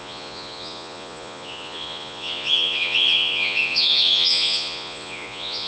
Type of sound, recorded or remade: remade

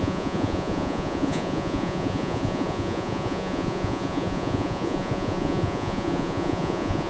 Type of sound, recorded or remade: remade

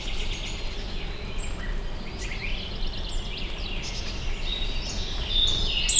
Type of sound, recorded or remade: recorded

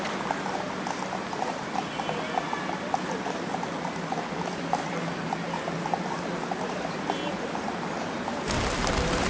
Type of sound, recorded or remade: recorded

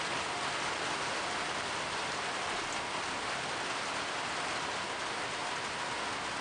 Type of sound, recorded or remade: recorded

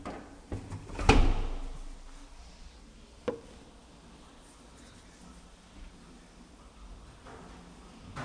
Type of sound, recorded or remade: recorded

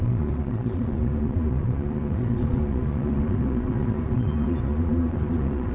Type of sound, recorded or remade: remade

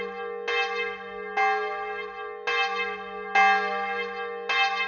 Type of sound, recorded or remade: recorded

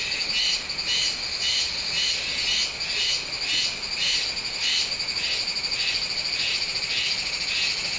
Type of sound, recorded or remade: recorded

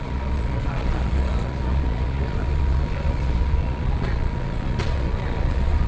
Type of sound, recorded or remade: remade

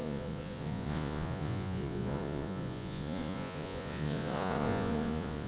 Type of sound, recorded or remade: remade